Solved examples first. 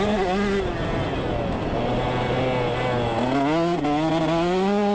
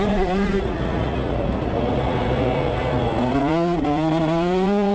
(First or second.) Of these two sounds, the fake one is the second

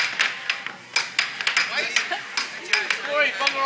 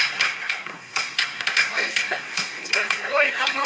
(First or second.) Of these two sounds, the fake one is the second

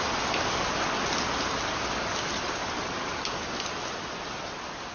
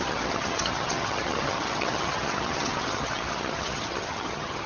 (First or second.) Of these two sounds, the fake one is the second